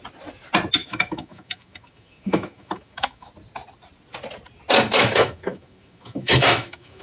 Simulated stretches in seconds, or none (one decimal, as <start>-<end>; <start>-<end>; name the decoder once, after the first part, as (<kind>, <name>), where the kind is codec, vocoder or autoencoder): 0.8-3.3 (autoencoder, DAC-VAE); 5.0-7.0